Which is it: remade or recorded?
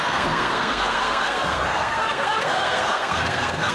remade